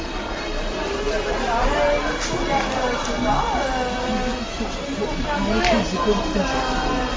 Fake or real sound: real